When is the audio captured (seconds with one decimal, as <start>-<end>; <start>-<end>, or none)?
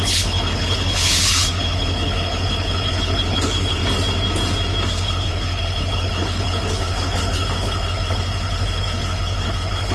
3.8-4.9